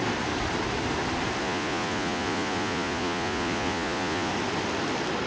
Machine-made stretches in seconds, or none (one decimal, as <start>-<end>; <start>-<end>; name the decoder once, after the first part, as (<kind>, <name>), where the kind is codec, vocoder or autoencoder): 1.4-4.3 (vocoder, Vocos)